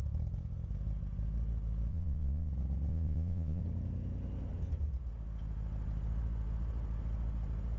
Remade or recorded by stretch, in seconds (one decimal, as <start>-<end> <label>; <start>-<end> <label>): 0.0-1.9 recorded; 1.9-2.5 remade; 2.5-2.9 recorded; 2.9-3.6 remade; 3.6-7.8 recorded